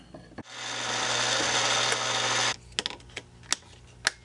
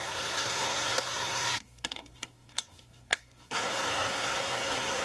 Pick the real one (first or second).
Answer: first